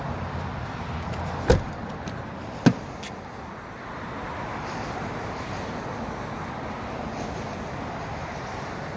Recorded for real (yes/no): yes